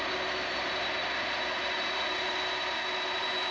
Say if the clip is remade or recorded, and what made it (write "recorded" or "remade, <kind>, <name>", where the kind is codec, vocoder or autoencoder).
recorded